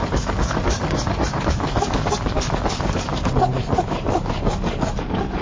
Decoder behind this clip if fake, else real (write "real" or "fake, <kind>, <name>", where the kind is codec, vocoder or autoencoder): fake, codec, DAC